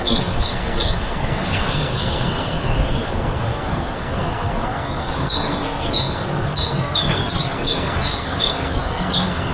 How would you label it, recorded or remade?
remade